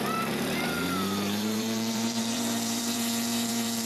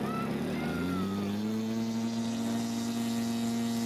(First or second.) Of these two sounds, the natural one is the second